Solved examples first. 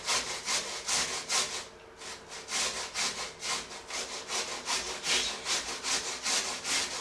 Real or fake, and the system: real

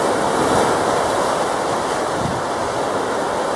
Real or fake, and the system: real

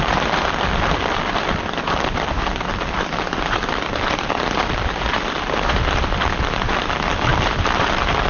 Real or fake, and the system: fake, vocoder, BigVGAN v2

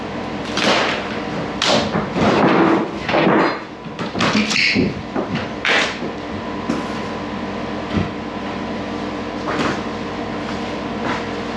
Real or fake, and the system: real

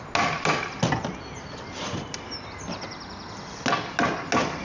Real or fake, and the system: real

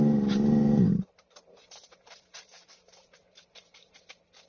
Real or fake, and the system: fake, vocoder, BigVGAN v2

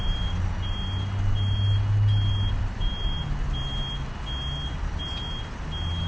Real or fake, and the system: real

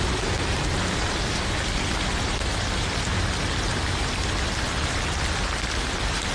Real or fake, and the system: real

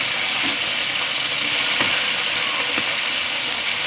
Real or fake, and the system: real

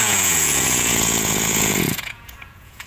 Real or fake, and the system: fake, vocoder, Vocos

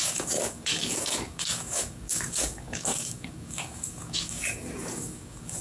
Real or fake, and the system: fake, codec, DAC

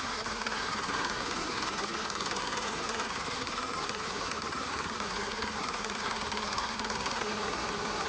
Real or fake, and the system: fake, codec, SNAC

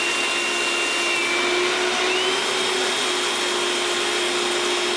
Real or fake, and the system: real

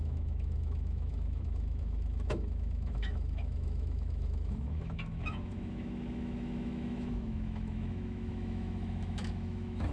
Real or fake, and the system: fake, autoencoder, DAC-VAE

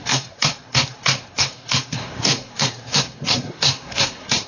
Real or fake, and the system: fake, codec, SNAC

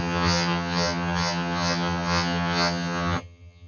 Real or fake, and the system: fake, vocoder, HiFi-GAN